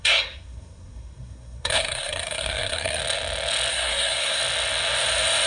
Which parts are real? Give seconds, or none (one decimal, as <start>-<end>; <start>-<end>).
3.0-3.7; 4.4-5.5